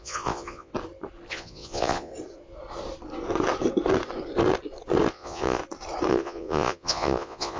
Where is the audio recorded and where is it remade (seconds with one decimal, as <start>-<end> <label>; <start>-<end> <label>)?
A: 0.0-0.7 remade; 0.7-1.3 recorded; 1.3-2.1 remade; 2.1-5.1 recorded; 5.1-5.6 remade; 5.6-6.1 recorded; 6.1-7.6 remade